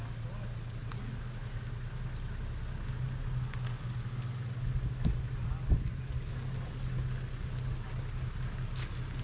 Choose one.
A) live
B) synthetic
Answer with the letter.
A